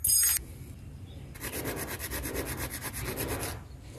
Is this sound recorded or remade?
recorded